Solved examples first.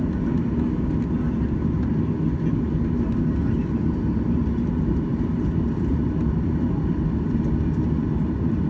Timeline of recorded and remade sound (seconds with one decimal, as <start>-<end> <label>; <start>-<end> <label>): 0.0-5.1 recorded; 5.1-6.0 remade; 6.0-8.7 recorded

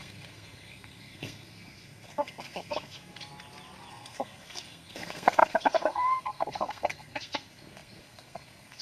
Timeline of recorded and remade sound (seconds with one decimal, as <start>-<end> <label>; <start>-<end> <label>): 0.0-3.3 remade; 3.3-3.9 recorded; 3.9-8.8 remade

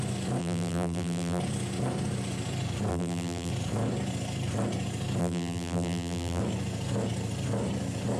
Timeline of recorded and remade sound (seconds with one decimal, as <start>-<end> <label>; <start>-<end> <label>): 0.0-0.4 recorded; 0.4-1.4 remade; 1.4-2.9 recorded; 2.9-3.5 remade; 3.5-5.2 recorded; 5.2-6.4 remade; 6.4-8.2 recorded